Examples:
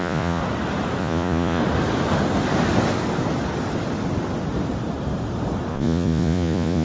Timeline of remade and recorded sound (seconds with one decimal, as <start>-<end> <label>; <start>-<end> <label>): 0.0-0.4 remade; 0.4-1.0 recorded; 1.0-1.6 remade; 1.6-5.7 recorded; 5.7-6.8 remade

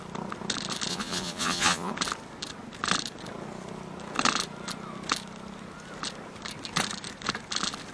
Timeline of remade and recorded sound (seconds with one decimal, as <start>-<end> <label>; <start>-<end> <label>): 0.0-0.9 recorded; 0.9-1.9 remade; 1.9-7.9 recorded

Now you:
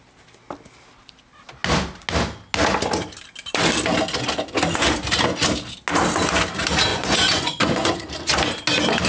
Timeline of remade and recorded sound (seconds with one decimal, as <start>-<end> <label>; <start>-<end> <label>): 0.0-6.9 recorded; 6.9-8.0 remade; 8.0-9.1 recorded

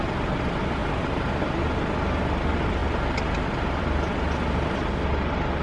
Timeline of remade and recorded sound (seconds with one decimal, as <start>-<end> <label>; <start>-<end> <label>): 0.0-5.6 recorded